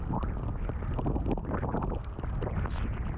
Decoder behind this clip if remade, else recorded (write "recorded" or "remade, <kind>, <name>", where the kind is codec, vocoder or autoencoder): recorded